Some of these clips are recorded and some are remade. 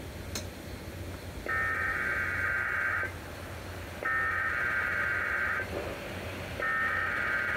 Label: recorded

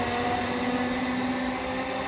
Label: recorded